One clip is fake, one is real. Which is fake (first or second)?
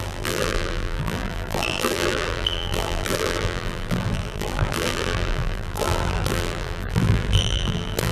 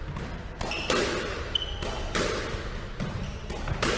first